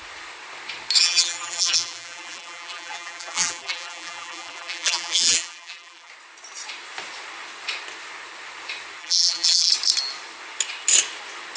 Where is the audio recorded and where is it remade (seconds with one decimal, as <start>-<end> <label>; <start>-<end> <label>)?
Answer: 0.0-1.0 recorded; 1.0-6.1 remade; 6.1-9.0 recorded; 9.0-9.7 remade; 9.7-11.6 recorded